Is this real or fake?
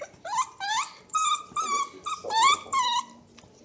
real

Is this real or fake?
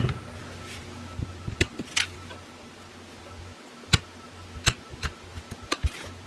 real